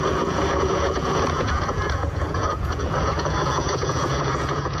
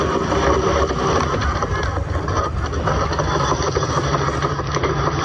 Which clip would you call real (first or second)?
second